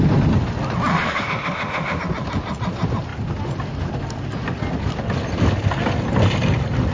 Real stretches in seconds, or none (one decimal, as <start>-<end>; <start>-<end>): 0.0-0.9; 2.0-6.9